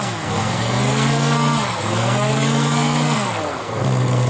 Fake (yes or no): yes